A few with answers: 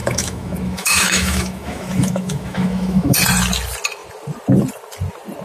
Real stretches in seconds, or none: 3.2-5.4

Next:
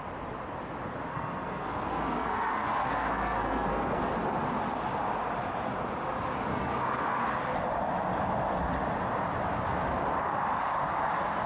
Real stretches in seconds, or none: 0.0-1.1; 4.1-6.5; 7.3-11.5

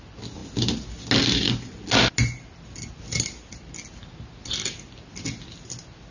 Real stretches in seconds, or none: 0.0-6.1

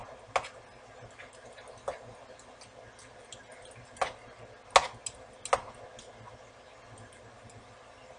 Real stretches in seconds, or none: 0.0-8.2

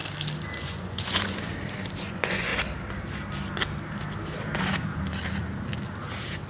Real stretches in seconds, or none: 0.0-0.6; 1.5-2.0; 2.5-6.5